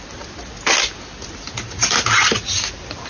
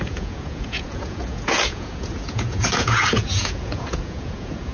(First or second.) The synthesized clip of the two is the second